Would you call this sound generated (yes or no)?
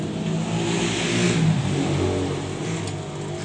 no